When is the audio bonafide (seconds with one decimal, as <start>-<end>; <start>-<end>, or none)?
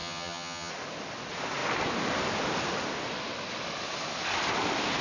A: 0.7-5.0